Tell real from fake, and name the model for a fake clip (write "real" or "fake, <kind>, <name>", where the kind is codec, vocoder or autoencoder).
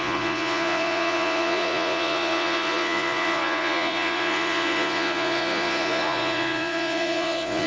fake, vocoder, Vocos